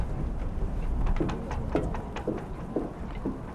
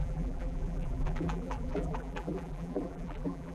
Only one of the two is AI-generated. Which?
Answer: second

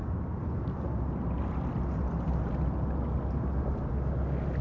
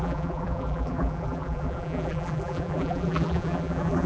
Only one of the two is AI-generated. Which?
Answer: second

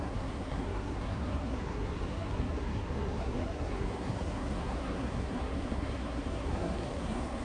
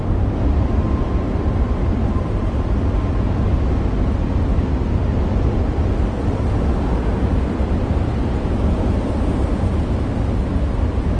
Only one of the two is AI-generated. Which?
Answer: first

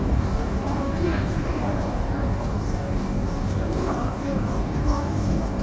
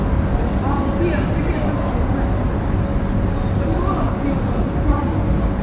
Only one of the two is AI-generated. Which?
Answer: first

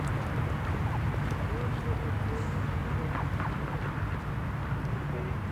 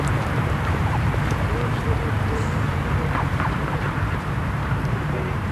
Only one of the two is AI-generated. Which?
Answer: second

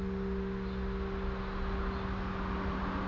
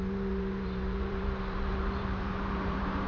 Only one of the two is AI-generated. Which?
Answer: second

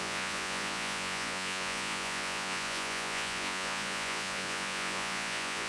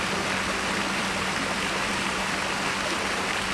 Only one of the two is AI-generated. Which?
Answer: first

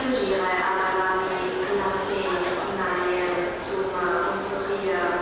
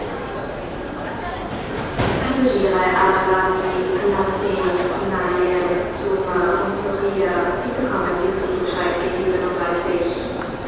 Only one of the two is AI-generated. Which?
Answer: second